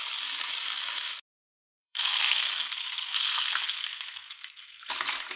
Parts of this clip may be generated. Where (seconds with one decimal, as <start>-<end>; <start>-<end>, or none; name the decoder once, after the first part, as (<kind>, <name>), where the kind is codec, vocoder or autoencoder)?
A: 1.7-4.9 (codec, SNAC)